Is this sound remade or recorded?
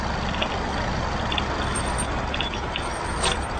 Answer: recorded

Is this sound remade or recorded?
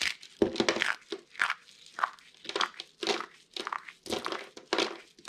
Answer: recorded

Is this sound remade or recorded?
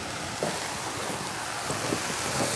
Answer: recorded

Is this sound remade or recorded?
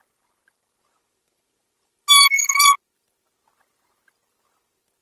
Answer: recorded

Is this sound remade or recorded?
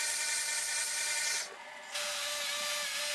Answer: recorded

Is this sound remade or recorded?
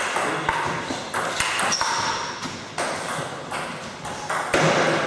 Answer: recorded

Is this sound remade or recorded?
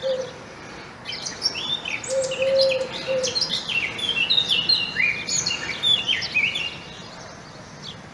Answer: recorded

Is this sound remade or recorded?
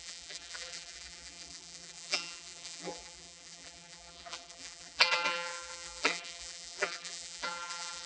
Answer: remade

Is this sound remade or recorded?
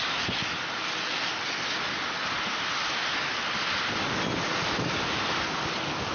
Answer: recorded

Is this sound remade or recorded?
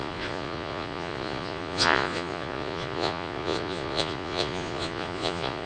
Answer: remade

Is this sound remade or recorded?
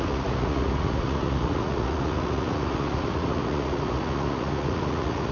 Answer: remade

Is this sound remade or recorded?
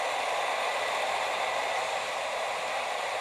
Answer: recorded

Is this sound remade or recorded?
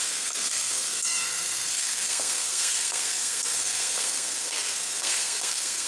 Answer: remade